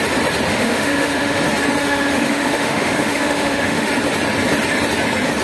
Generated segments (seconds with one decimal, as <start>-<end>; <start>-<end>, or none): 0.5-1.4; 1.8-3.9